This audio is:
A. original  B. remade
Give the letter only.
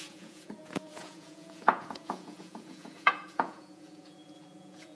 B